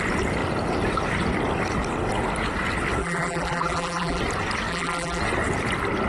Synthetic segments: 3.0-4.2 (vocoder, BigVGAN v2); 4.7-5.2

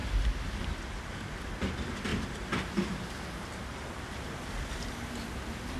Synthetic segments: none

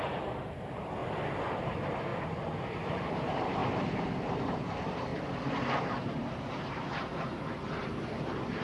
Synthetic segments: 0.0-1.0 (vocoder, BigVGAN v2); 1.7-2.1; 2.8-5.1; 5.8-8.6

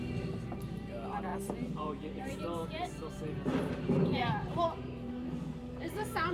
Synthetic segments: 0.0-6.3 (vocoder, BigVGAN v2)

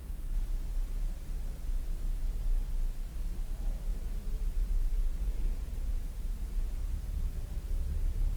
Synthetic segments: 3.9-8.0 (vocoder, BigVGAN v2)

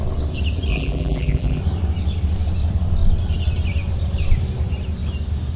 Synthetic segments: 0.7-1.6 (vocoder, BigVGAN v2)